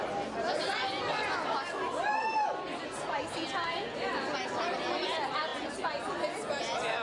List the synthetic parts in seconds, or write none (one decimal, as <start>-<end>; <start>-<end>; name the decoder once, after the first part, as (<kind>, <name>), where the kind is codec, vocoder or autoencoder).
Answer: none